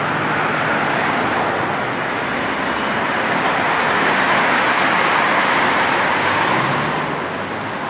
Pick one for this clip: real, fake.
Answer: real